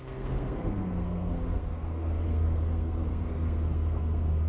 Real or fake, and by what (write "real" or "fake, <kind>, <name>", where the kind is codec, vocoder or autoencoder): fake, codec, SNAC